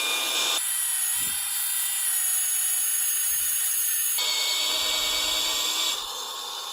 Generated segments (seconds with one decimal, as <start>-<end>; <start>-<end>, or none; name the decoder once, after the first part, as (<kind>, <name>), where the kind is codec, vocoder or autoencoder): 0.0-1.6 (vocoder, BigVGAN v2); 3.4-6.7